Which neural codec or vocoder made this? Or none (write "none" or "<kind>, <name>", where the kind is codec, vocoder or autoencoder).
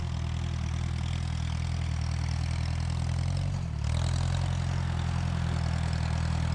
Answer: none